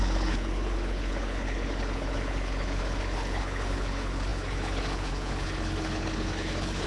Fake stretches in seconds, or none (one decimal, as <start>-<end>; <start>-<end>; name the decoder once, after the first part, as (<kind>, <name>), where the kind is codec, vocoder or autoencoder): 0.0-6.9 (codec, HILCodec)